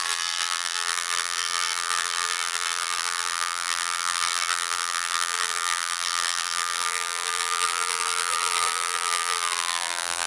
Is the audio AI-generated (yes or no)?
yes